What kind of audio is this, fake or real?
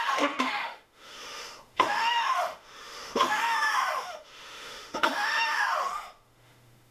fake